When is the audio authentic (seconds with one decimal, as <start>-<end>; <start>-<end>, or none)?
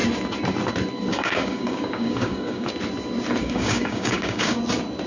0.0-1.1; 2.7-3.4; 4.6-5.1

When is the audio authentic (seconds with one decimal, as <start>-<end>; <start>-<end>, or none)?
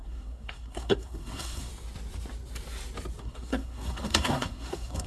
1.7-3.2